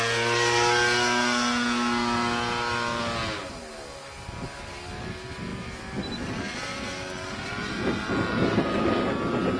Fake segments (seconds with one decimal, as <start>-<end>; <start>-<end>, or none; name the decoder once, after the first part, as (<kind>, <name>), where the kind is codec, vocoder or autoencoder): none